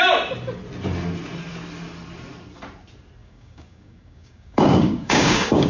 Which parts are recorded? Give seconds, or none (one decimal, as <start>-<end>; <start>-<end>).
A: 0.0-3.2